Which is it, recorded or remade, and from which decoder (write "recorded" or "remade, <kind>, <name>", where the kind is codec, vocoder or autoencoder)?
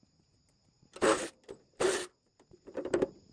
recorded